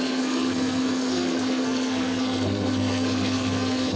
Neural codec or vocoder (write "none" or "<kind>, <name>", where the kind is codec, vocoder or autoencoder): codec, SNAC